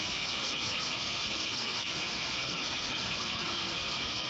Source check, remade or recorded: remade